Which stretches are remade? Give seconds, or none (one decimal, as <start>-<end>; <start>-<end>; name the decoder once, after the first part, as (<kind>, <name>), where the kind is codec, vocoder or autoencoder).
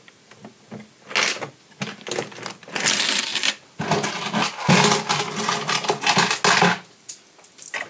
none